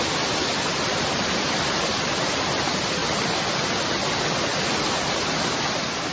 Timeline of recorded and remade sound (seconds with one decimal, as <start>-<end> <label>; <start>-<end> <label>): 0.0-6.1 recorded